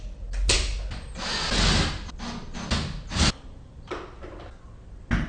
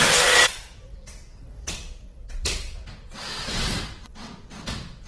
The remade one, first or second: second